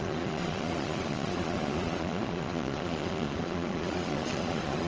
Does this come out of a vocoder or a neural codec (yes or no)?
yes